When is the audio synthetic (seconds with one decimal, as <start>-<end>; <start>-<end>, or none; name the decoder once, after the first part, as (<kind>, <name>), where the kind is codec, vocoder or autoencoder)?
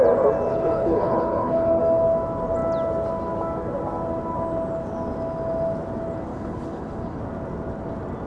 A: 0.5-1.8 (codec, HILCodec); 6.3-7.2